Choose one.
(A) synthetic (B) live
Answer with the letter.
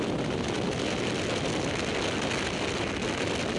B